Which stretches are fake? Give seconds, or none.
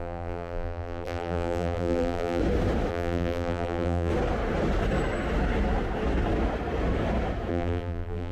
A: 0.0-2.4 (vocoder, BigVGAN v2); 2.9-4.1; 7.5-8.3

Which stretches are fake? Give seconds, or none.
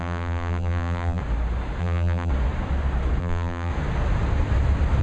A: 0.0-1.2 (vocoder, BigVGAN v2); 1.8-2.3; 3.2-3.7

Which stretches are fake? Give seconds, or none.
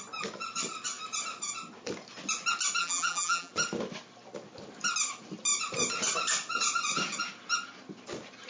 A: 2.8-3.5 (vocoder, BigVGAN v2)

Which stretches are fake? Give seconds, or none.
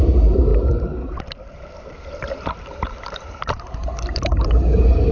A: 0.0-0.5 (vocoder, BigVGAN v2); 1.5-5.1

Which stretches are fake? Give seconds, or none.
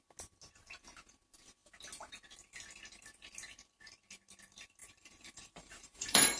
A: 4.8-6.4 (vocoder, BigVGAN v2)